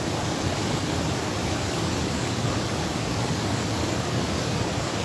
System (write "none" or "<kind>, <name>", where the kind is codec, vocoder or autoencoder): codec, DAC